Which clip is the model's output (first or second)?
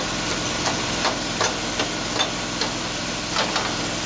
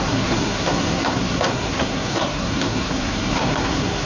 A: second